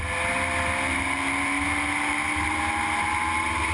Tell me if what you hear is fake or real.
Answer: real